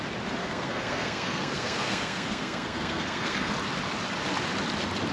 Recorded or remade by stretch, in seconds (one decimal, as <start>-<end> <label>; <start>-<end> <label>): 0.0-0.4 recorded; 0.4-3.5 remade; 3.5-5.1 recorded